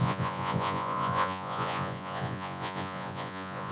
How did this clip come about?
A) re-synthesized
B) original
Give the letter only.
A